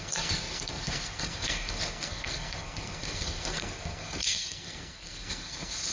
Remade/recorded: remade